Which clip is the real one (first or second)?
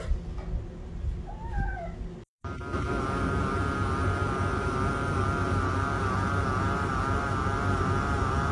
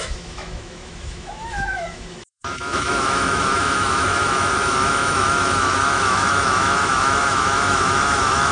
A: first